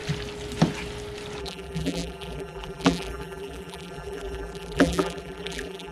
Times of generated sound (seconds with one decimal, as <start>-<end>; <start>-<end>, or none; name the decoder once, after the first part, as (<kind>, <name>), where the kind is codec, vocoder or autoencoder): 1.4-5.9 (vocoder, BigVGAN v2)